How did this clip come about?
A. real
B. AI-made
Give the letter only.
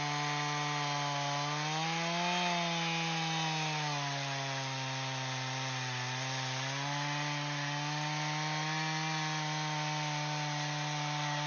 A